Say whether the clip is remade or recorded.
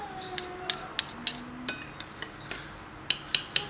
recorded